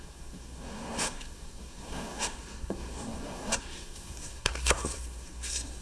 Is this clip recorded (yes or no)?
no